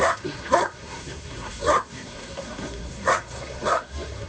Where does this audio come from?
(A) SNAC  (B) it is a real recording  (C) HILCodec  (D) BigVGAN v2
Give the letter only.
A